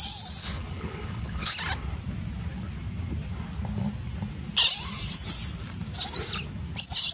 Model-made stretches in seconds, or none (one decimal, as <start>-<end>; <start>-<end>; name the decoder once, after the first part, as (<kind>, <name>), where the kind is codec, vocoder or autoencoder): 0.4-1.5 (codec, HILCodec)